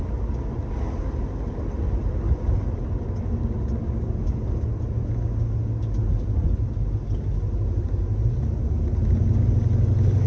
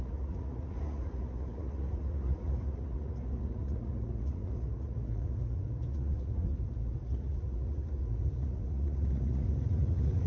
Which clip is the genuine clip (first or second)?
first